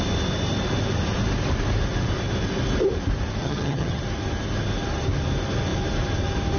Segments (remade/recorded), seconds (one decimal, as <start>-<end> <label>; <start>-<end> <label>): 0.0-3.4 recorded; 3.4-4.0 remade; 4.0-6.6 recorded

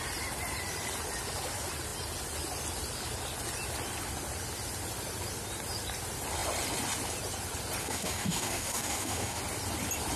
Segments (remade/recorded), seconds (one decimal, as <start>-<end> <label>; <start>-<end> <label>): 0.0-7.8 recorded; 7.8-9.4 remade; 9.4-10.2 recorded

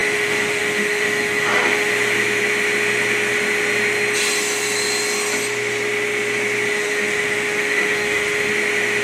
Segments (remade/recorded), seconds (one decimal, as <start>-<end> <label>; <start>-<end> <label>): 0.0-1.9 remade; 1.9-6.7 recorded; 6.7-8.5 remade; 8.5-9.0 recorded

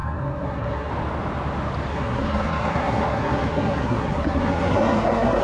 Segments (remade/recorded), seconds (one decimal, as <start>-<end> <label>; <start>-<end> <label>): 0.0-0.9 remade; 0.9-1.9 recorded; 1.9-5.4 remade

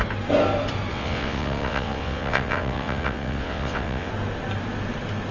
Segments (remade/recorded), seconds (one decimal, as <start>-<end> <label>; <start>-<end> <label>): 0.0-0.9 recorded; 0.9-4.1 remade; 4.1-5.3 recorded

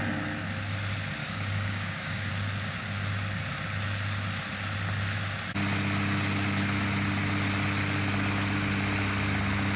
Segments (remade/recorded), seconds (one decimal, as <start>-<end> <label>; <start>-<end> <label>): 0.0-1.2 recorded; 1.2-2.3 remade; 2.3-9.8 recorded

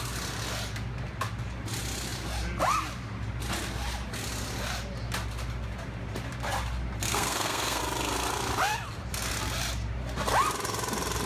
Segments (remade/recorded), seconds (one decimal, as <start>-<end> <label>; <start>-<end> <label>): 0.0-7.1 recorded; 7.1-7.8 remade; 7.8-11.3 recorded